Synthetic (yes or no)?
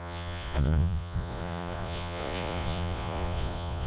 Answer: yes